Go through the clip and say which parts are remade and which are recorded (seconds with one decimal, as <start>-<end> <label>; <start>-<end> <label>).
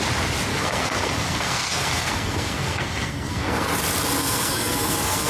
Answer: 0.0-0.5 recorded; 0.5-3.7 remade; 3.7-4.2 recorded; 4.2-5.3 remade